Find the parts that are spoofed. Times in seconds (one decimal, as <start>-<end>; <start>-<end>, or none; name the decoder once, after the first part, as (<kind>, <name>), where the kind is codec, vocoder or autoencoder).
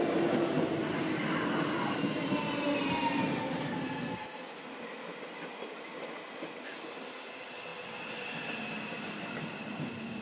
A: none